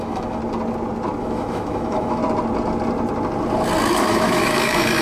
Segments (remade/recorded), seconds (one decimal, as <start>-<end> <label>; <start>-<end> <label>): 0.0-0.4 remade; 0.4-1.2 recorded; 1.2-2.2 remade; 2.2-3.9 recorded; 3.9-5.0 remade